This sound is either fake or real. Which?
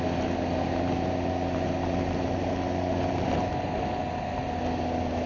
real